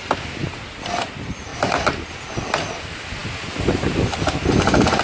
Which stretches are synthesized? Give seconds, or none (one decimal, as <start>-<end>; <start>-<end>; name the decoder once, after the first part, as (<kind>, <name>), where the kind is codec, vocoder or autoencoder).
none